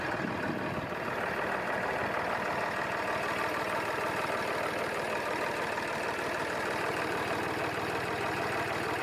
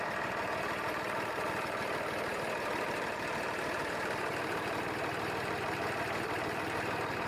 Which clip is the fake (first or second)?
second